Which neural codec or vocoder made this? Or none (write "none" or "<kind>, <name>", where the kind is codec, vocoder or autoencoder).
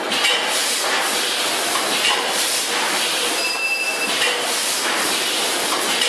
vocoder, BigVGAN v2